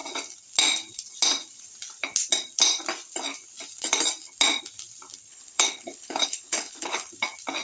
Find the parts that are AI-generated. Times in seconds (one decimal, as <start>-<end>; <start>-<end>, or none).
5.3-7.1